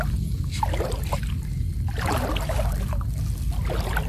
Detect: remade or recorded recorded